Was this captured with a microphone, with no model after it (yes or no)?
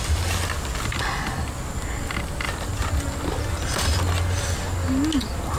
yes